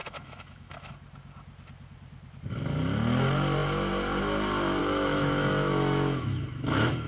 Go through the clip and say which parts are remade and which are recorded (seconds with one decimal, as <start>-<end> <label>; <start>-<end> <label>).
0.0-0.9 remade; 0.9-4.8 recorded; 4.8-7.1 remade